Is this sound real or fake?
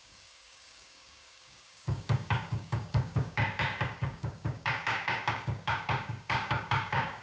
fake